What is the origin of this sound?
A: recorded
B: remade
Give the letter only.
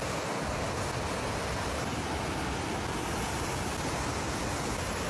A